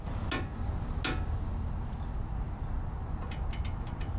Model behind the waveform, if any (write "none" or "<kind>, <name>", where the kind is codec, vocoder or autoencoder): none